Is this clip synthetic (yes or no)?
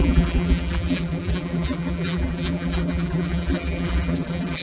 yes